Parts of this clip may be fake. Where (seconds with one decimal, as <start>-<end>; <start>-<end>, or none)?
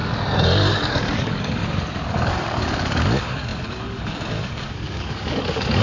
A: 0.7-1.6; 2.1-5.8